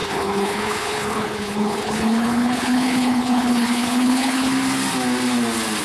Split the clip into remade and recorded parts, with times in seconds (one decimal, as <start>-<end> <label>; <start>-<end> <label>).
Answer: 0.0-4.5 remade; 4.5-5.8 recorded